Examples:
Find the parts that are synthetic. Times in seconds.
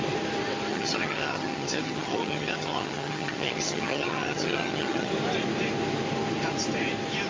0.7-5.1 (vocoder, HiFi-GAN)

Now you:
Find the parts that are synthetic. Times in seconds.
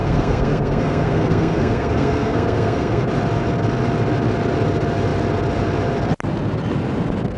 0.0-3.1 (codec, SNAC)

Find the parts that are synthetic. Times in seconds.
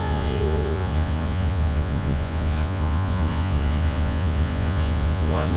0.0-5.6 (vocoder, Vocos)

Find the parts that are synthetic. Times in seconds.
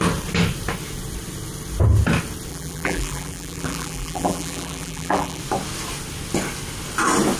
2.5-5.4 (vocoder, BigVGAN v2)